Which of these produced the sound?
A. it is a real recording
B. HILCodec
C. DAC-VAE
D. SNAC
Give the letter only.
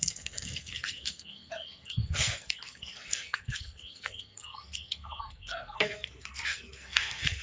D